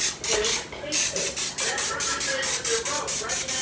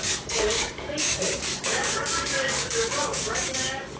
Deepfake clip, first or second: second